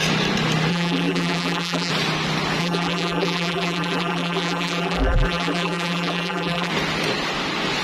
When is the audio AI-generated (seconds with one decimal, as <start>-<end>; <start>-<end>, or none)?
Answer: 0.7-1.9; 2.6-6.7